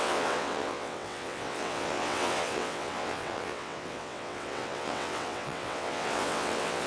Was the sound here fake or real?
fake